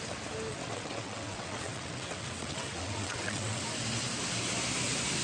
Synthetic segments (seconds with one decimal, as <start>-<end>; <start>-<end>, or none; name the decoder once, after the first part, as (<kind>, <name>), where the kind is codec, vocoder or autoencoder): 0.5-3.6 (vocoder, WaveNeXt)